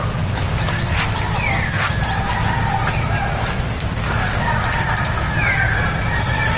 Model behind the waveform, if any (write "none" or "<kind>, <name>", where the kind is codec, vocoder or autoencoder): none